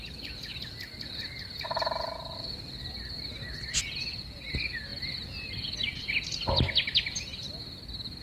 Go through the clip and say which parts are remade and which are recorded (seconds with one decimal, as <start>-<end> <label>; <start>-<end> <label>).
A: 0.0-8.2 recorded